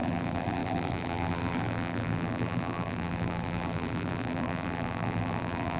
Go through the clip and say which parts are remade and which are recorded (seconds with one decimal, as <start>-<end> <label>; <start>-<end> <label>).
0.0-5.8 remade